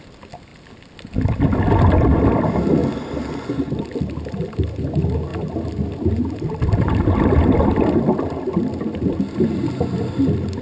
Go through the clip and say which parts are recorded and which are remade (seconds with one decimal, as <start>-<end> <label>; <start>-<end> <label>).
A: 0.0-10.6 recorded